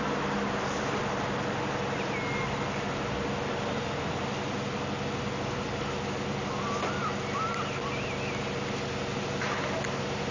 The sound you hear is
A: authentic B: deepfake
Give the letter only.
A